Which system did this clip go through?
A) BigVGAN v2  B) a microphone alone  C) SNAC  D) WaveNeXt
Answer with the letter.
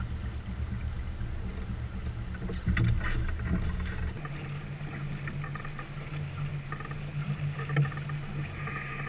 B